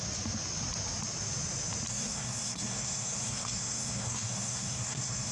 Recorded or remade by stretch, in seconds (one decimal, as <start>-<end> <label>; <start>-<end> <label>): 0.0-1.9 recorded; 1.9-5.3 remade